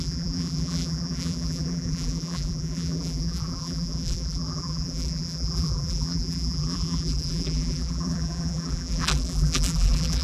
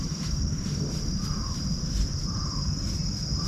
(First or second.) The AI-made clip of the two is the first